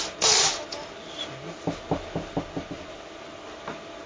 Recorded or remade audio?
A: recorded